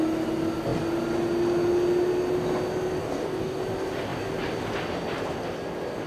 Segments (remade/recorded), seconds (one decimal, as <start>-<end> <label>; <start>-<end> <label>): 0.0-3.0 recorded; 3.0-3.6 remade; 3.6-6.1 recorded